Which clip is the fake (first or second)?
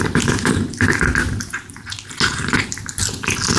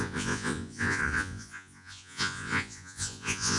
second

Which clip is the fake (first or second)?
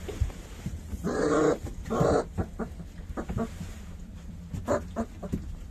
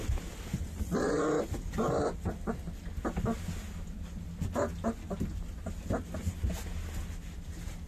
first